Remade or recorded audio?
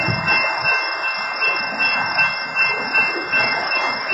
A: recorded